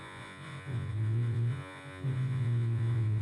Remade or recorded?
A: remade